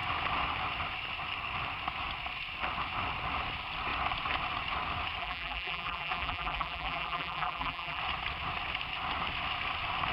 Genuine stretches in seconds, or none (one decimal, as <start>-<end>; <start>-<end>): 0.0-5.2; 8.0-10.1